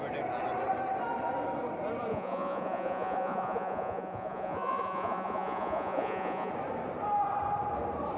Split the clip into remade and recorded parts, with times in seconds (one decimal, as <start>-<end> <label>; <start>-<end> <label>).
0.0-2.1 recorded; 2.1-6.5 remade; 6.5-8.2 recorded